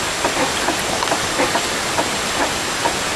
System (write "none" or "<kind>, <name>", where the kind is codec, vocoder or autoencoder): none